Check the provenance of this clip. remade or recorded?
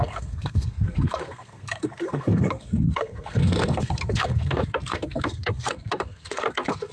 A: remade